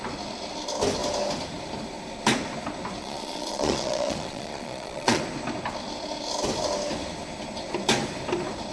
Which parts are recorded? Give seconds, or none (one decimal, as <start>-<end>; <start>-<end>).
0.0-3.0; 5.2-8.7